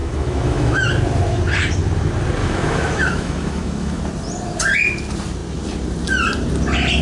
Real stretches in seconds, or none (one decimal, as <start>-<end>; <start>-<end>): 0.9-2.4; 4.0-7.0